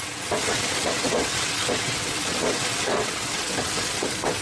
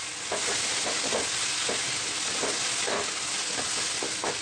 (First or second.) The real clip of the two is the second